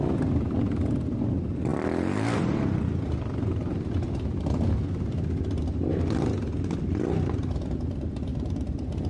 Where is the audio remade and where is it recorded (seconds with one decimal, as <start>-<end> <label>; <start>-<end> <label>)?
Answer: 0.0-9.1 recorded